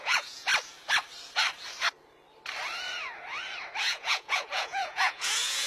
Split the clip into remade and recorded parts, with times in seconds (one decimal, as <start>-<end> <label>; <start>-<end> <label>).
0.0-0.5 remade; 0.5-3.9 recorded; 3.9-5.7 remade